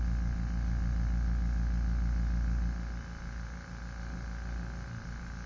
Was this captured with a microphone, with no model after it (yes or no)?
yes